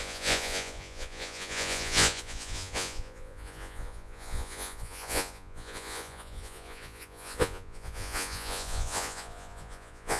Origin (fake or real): fake